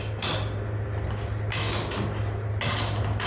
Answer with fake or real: real